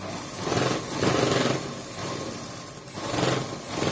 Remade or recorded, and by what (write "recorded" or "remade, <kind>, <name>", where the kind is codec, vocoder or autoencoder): recorded